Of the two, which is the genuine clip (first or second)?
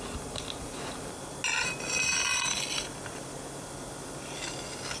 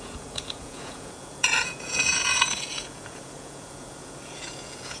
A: first